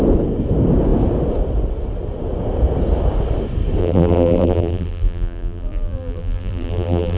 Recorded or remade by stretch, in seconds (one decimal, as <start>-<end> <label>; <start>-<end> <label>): 0.0-3.8 recorded; 3.8-7.2 remade